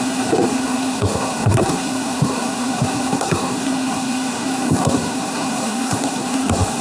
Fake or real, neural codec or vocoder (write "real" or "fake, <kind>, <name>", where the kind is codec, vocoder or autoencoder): fake, codec, SNAC